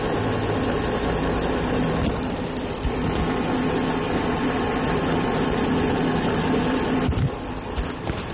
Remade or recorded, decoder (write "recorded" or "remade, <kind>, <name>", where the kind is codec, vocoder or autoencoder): recorded